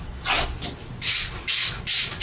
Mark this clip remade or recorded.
recorded